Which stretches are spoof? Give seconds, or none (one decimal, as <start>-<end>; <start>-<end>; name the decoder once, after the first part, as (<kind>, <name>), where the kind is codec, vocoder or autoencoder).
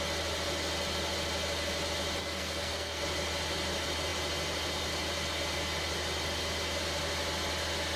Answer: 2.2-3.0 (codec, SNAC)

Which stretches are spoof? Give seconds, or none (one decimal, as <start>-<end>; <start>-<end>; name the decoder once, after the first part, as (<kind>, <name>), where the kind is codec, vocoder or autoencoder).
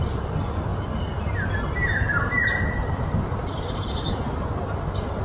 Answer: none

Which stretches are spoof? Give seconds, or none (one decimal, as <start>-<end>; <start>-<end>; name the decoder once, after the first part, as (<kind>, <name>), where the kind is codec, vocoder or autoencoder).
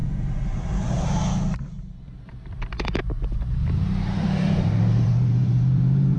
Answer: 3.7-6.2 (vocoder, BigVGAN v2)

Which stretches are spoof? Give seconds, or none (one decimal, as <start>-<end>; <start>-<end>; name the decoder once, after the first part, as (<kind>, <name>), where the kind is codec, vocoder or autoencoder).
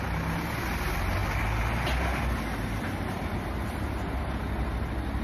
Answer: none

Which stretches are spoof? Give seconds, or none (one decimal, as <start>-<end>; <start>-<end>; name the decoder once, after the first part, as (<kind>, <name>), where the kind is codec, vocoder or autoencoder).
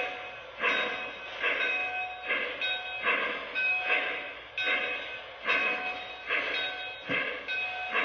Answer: 3.5-4.5 (autoencoder, DAC-VAE); 5.6-6.1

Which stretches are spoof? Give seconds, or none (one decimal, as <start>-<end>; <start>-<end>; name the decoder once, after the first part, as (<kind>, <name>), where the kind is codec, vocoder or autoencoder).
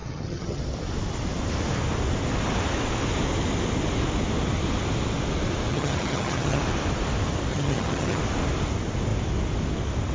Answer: 0.0-0.6 (vocoder, HiFi-GAN); 5.7-6.6; 7.5-8.2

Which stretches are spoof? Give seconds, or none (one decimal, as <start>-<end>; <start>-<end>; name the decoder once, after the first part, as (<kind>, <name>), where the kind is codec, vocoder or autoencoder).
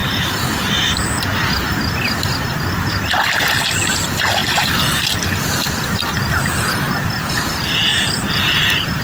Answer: none